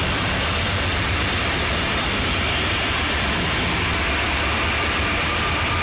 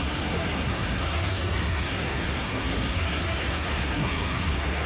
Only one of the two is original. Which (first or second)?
first